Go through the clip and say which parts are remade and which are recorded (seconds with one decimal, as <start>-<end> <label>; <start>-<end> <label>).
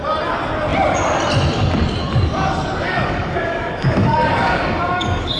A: 0.0-2.0 recorded; 2.0-5.4 remade